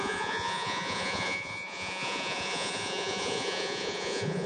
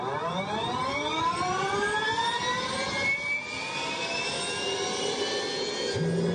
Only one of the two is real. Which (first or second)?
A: second